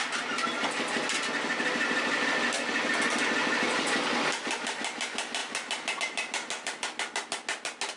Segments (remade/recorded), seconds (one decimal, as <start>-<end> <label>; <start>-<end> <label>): 0.0-8.0 recorded